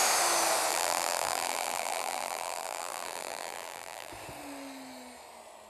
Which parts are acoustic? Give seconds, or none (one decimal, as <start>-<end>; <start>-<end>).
0.0-0.7; 4.1-5.7